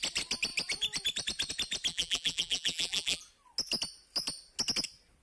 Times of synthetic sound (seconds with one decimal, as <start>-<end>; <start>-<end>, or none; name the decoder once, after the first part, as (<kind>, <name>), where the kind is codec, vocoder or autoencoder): 1.9-3.2 (vocoder, BigVGAN v2)